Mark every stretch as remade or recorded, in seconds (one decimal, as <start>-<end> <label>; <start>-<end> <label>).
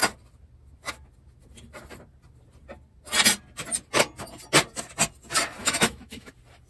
0.0-5.6 recorded; 5.6-6.3 remade; 6.3-6.7 recorded